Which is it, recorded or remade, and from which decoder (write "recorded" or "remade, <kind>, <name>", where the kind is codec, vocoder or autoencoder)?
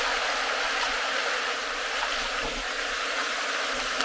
recorded